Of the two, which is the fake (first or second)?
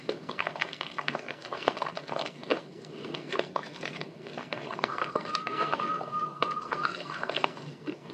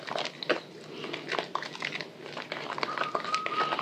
first